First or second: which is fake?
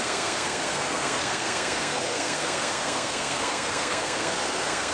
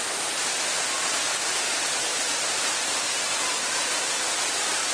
first